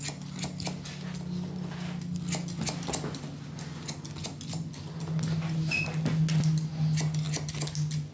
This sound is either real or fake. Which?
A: real